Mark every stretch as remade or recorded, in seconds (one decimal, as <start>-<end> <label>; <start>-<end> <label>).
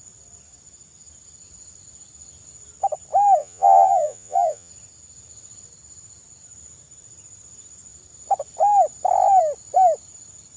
0.0-3.4 recorded; 3.4-4.7 remade; 4.7-10.6 recorded